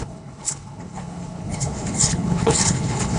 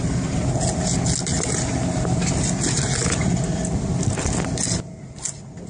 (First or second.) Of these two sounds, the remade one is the first